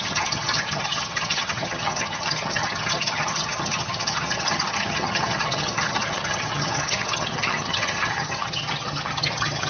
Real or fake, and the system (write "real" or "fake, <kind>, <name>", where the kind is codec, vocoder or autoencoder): fake, vocoder, HiFi-GAN